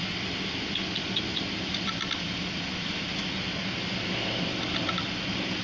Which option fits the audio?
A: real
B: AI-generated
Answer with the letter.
A